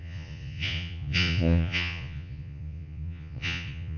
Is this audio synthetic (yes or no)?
yes